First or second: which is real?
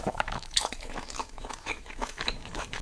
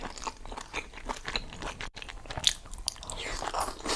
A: second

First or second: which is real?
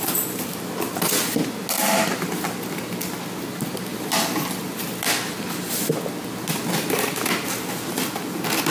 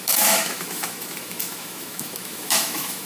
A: first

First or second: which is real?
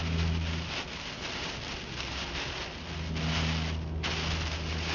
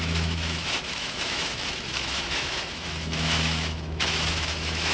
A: first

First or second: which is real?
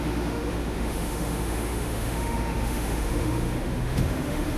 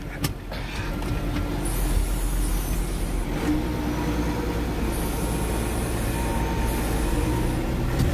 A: second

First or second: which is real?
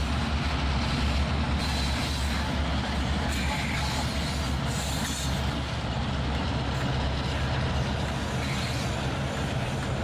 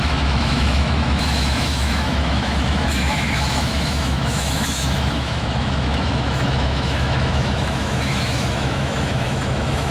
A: first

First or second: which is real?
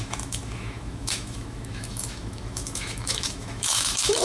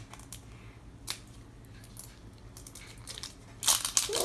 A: second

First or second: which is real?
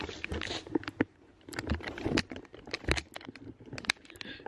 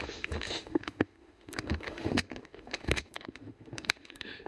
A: first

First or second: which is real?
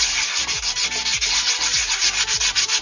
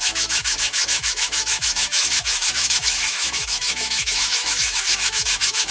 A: first